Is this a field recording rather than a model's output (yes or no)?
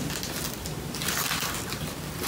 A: yes